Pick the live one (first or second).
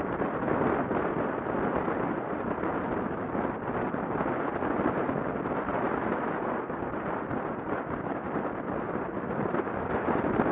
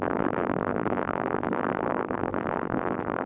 first